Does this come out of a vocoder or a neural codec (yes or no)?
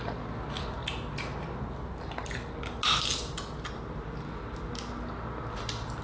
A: no